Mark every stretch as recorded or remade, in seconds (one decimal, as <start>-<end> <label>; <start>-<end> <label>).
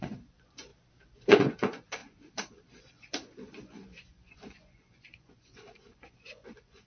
0.0-0.7 remade; 0.7-1.3 recorded; 1.3-6.9 remade